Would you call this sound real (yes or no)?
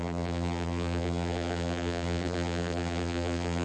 no